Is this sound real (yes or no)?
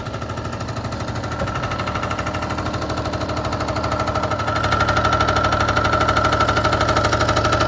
yes